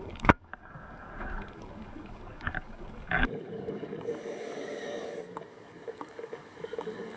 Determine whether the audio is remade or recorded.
remade